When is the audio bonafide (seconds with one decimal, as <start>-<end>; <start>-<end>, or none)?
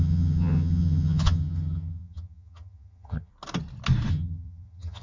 3.3-4.1